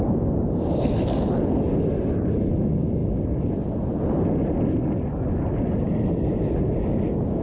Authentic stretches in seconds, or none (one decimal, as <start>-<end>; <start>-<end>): 0.0-7.4